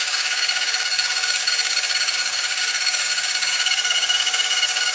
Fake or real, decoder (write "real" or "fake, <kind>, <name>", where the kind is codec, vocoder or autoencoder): fake, codec, DAC